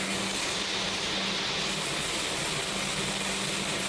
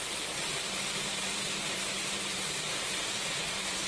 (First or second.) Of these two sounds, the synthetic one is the second